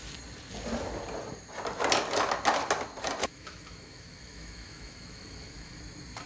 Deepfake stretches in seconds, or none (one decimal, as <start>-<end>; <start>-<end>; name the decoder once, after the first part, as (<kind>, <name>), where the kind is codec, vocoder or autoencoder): 3.2-5.8 (autoencoder, DAC-VAE)